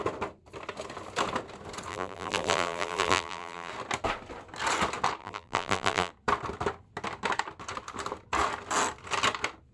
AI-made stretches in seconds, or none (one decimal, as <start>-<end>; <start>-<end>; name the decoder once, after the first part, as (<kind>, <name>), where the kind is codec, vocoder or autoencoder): 1.9-3.7 (vocoder, BigVGAN v2); 5.2-6.1